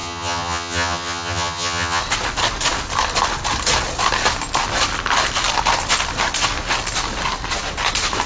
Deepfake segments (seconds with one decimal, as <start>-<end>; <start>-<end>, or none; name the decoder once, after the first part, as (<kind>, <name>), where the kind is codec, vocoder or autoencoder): 0.0-2.0 (vocoder, HiFi-GAN)